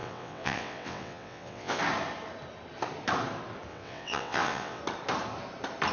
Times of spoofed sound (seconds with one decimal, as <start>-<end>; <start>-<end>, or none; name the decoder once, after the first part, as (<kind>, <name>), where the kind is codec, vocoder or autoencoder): 0.0-1.8 (vocoder, WaveNeXt); 3.7-4.8